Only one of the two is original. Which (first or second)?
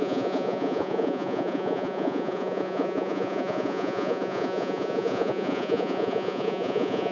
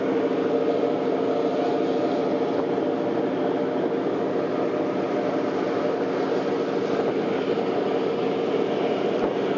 second